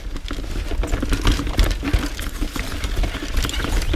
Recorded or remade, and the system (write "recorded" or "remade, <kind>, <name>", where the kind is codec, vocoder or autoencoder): recorded